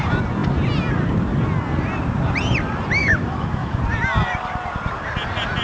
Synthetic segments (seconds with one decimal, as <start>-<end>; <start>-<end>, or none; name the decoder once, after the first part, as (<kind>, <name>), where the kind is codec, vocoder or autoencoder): 3.0-3.8 (autoencoder, DAC-VAE)